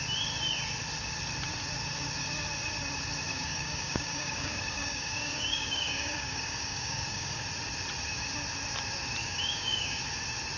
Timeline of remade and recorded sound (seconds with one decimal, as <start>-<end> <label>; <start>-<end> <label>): 0.0-3.3 recorded; 3.3-7.4 remade; 7.4-9.2 recorded; 9.2-10.0 remade; 10.0-10.6 recorded